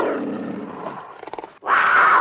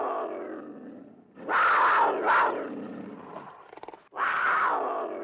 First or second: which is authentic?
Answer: first